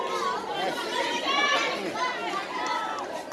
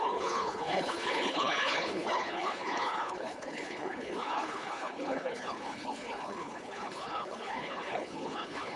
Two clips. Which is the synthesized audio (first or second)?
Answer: second